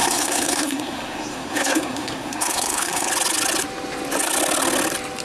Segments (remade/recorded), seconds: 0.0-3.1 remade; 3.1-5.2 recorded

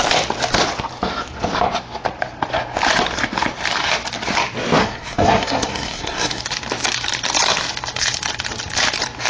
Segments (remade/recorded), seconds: 0.0-4.8 recorded; 4.8-6.4 remade; 6.4-9.3 recorded

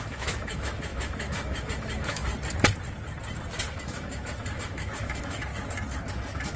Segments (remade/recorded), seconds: 0.0-2.3 remade; 2.3-3.7 recorded; 3.7-5.5 remade; 5.5-6.1 recorded; 6.1-6.6 remade